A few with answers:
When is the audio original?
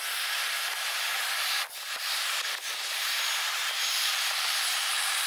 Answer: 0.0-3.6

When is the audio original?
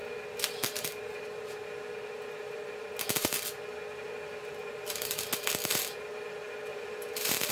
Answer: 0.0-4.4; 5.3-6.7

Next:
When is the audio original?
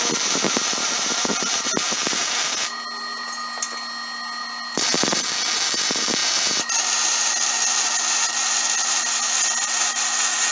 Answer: 0.0-10.5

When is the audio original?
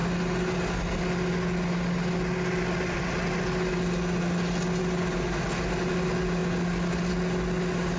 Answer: 0.0-8.0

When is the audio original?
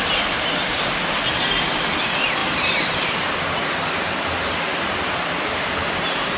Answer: 0.0-4.7; 5.8-6.4